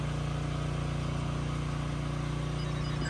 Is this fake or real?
real